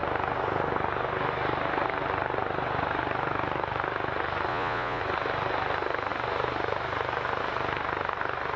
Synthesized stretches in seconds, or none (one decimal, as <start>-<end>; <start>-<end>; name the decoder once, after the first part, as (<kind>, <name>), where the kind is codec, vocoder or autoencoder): 4.5-5.0 (vocoder, Vocos)